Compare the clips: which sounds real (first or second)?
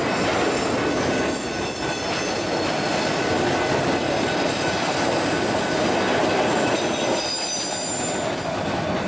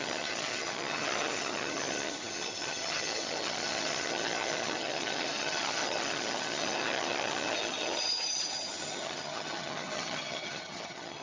first